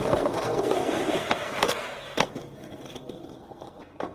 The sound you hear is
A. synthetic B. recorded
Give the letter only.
A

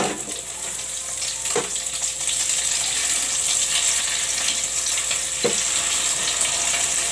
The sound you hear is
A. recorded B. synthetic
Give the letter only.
A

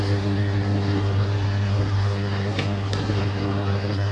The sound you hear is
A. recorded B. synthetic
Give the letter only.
B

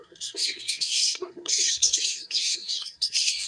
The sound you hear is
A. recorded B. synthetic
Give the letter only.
B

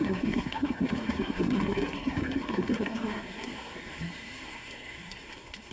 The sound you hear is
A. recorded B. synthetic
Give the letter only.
B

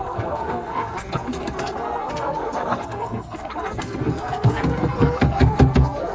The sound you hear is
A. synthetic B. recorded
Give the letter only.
A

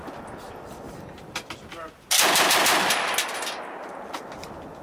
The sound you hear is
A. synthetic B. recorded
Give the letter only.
B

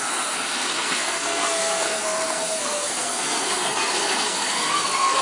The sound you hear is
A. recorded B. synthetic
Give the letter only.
B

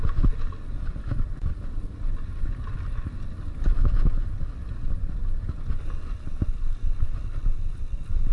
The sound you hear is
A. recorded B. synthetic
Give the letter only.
A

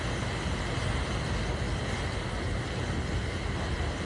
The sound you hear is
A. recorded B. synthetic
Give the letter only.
A